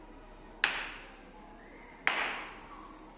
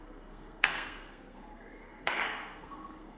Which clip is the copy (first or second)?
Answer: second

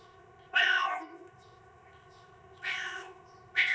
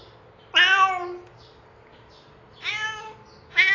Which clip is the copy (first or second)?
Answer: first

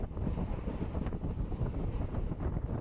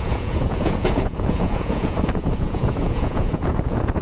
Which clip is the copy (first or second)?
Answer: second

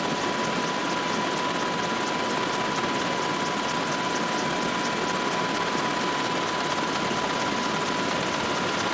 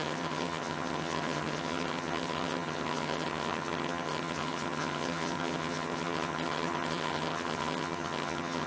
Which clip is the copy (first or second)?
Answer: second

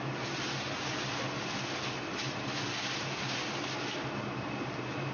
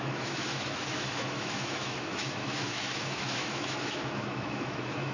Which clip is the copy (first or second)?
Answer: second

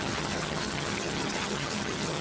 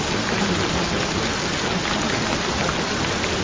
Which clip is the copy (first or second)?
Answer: first